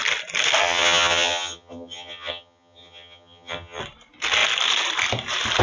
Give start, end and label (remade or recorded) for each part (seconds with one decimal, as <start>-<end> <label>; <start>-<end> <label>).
0.0-0.6 recorded; 0.6-3.8 remade; 3.8-5.6 recorded